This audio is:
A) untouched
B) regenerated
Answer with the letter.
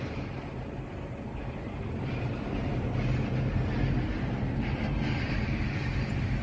A